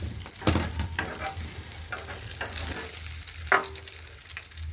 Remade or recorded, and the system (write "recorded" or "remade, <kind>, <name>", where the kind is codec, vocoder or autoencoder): recorded